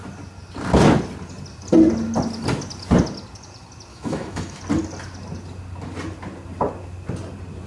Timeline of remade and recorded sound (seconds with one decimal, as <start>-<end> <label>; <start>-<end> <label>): 0.0-3.9 recorded; 3.9-4.6 remade; 4.6-7.7 recorded

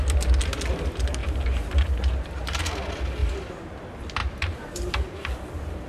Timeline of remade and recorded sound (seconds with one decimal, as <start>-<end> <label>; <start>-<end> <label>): 0.0-1.2 recorded; 1.2-2.6 remade; 2.6-3.2 recorded; 3.2-3.7 remade; 3.7-4.2 recorded; 4.2-5.5 remade; 5.5-5.9 recorded